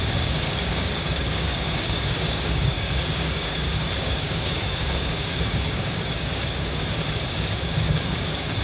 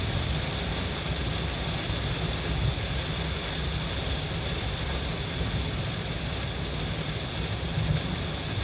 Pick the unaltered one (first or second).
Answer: second